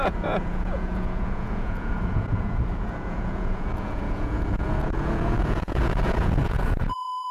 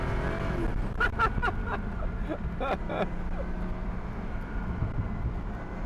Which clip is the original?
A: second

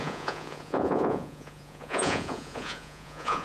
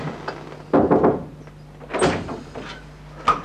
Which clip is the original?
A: second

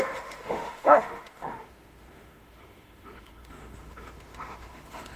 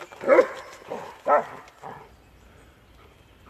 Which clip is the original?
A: second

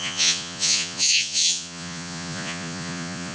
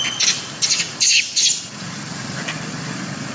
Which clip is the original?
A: second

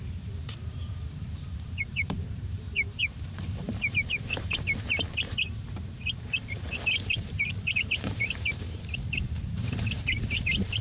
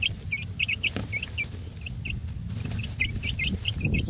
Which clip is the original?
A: second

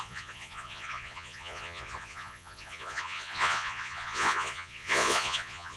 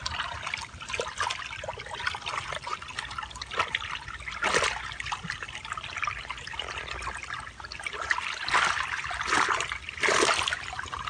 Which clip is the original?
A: second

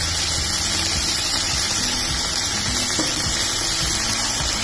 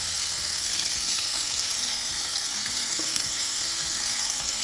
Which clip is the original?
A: first